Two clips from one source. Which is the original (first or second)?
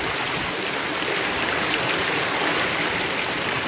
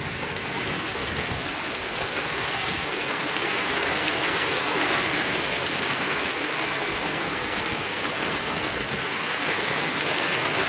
first